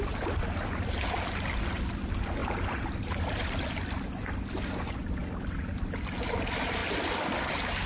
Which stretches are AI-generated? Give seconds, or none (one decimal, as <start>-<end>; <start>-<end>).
2.4-3.5